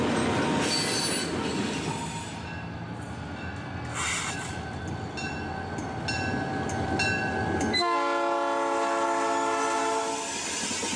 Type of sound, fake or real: real